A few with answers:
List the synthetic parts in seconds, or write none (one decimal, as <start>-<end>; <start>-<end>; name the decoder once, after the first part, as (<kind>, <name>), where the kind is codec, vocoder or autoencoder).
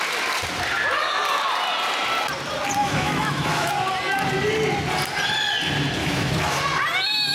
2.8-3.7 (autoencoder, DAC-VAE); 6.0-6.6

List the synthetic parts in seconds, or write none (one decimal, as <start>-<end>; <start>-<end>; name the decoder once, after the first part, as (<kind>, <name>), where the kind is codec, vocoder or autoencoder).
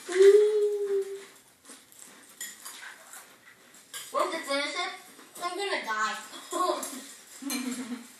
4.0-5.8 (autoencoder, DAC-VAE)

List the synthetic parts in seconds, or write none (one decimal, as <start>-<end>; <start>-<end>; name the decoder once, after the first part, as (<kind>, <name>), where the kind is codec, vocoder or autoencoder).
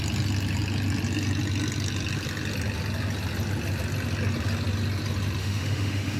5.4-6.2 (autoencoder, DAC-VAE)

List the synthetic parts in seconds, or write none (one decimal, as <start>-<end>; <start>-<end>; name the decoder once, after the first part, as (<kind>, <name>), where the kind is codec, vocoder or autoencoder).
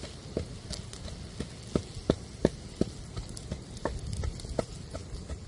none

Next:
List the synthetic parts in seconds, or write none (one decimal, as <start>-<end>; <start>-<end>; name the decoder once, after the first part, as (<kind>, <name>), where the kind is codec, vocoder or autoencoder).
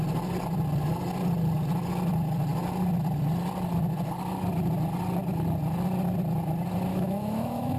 6.9-7.8 (autoencoder, DAC-VAE)